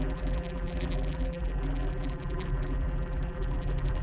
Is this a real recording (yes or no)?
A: no